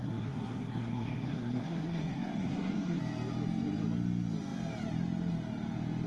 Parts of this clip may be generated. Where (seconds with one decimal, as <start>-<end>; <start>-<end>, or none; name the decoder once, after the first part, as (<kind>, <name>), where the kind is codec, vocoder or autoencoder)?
0.0-3.0 (codec, SNAC)